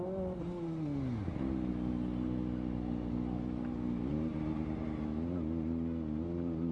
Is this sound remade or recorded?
recorded